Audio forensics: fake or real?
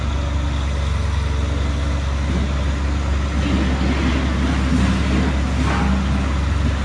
real